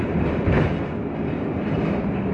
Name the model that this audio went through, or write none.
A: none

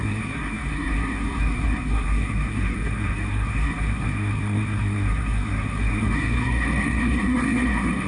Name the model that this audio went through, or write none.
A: codec, SNAC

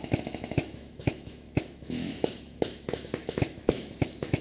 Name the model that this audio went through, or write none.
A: autoencoder, DAC-VAE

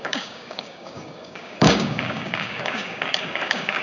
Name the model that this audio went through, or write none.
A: codec, DAC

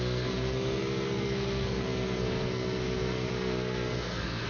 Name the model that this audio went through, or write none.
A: codec, SNAC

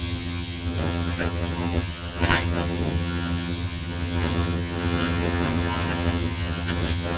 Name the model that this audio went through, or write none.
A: vocoder, HiFi-GAN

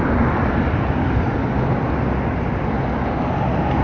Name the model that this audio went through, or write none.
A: none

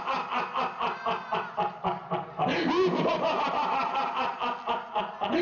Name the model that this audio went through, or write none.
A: none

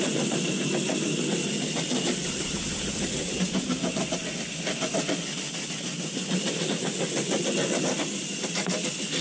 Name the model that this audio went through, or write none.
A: none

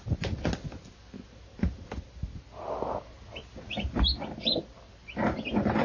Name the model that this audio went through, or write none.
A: none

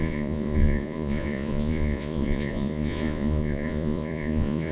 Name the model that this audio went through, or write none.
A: vocoder, Vocos